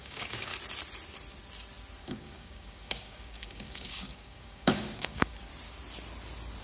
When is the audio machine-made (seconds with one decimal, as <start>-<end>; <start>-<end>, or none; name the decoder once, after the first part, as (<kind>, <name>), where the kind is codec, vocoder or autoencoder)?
0.0-0.5 (codec, DAC); 2.0-5.5